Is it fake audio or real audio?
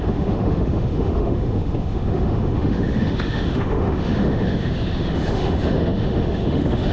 fake